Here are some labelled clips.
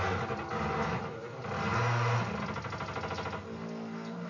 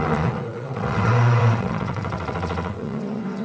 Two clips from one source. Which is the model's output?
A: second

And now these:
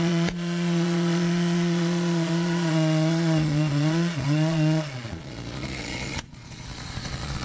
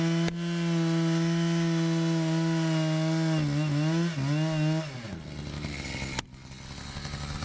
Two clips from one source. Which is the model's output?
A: first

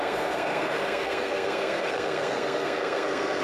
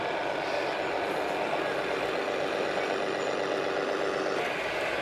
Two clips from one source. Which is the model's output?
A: first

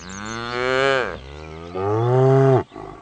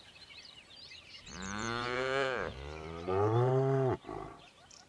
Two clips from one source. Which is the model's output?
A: second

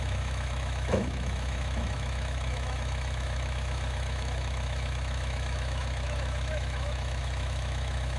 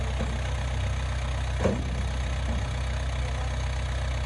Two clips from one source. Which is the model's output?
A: first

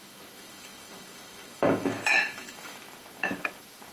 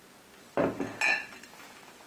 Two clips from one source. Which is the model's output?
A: first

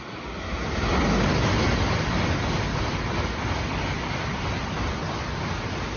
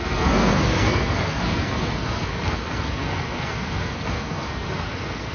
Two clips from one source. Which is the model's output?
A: second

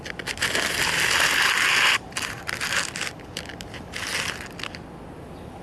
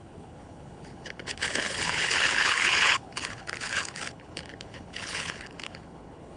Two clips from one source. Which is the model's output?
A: second